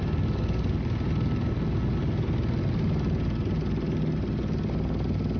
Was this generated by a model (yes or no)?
no